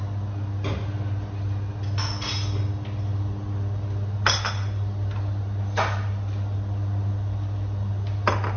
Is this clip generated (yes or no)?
no